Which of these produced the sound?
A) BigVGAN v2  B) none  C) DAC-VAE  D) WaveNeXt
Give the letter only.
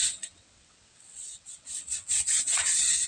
D